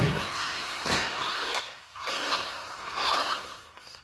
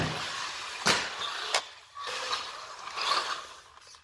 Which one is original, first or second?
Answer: second